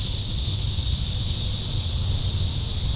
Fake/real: real